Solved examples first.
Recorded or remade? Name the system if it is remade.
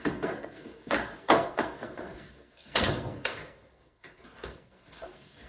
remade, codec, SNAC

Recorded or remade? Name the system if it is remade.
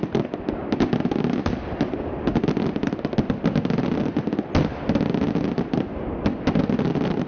recorded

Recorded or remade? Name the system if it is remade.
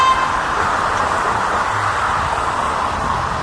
recorded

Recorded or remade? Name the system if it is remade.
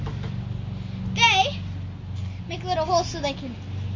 recorded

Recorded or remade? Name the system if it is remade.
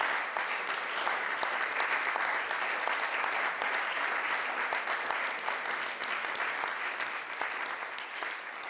recorded